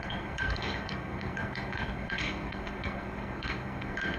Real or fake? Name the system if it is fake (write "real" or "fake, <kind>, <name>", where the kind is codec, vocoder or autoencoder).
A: fake, codec, SNAC